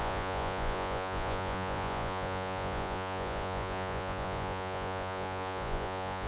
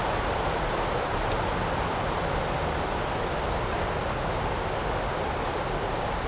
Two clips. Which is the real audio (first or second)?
second